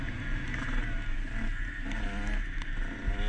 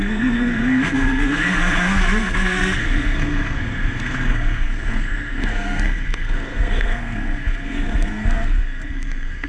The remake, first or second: second